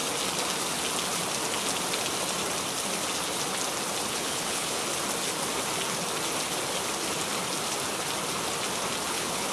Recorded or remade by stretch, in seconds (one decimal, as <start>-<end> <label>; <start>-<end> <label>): 0.0-4.1 recorded; 4.1-4.8 remade; 4.8-9.1 recorded; 9.1-9.5 remade